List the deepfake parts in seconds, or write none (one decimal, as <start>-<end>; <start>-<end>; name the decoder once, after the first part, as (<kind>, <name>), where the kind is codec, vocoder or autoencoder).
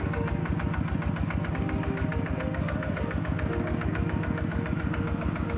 0.0-0.4 (codec, DAC); 1.5-5.6